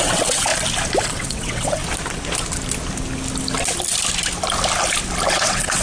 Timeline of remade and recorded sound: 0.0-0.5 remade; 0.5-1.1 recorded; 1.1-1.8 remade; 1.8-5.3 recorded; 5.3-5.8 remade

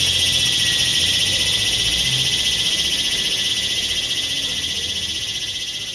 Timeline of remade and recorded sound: 0.0-5.9 recorded